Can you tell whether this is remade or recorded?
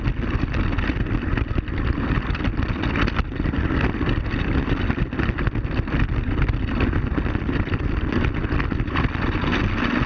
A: recorded